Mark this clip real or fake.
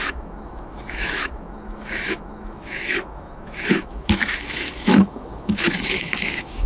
fake